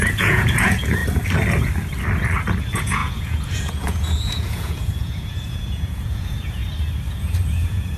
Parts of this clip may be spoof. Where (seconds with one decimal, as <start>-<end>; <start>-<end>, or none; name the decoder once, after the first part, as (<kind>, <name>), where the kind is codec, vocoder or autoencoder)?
0.0-1.0 (vocoder, Vocos); 2.6-6.6; 7.1-8.0